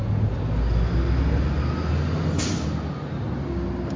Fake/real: real